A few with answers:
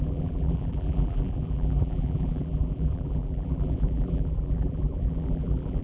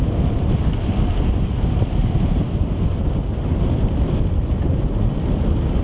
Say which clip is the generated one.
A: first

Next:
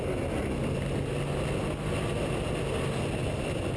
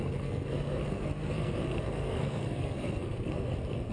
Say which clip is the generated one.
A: second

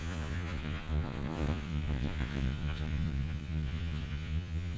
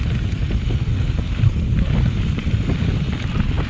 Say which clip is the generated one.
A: first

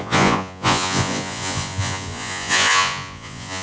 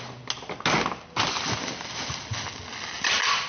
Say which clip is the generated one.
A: first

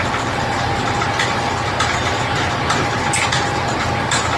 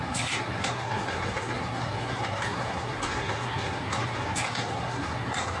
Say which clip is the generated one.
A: second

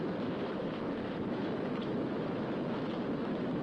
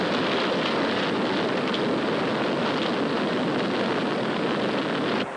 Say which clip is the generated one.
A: first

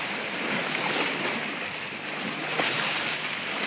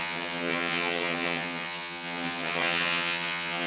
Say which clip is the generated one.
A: second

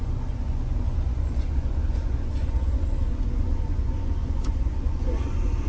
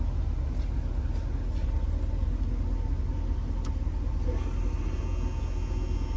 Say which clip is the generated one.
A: first